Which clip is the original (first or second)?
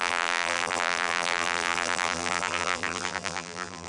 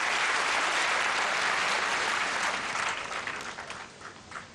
second